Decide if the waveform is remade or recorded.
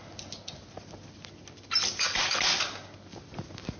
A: recorded